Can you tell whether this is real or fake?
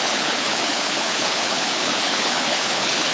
fake